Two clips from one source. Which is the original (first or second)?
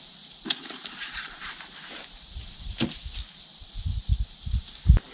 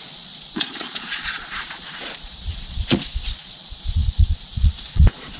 first